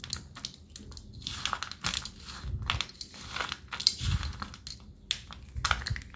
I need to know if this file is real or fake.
real